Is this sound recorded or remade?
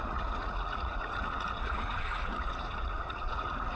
remade